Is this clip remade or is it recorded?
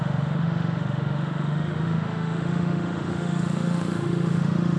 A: remade